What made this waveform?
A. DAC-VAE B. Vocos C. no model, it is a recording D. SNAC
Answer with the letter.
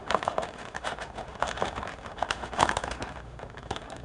A